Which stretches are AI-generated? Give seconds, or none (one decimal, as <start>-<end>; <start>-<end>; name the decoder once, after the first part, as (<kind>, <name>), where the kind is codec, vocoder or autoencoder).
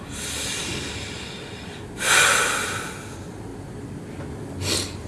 none